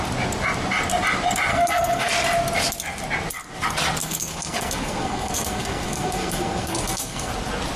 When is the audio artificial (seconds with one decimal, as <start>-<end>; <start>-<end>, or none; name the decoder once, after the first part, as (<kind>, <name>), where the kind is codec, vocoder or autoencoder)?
1.5-2.1 (codec, SNAC); 4.0-7.3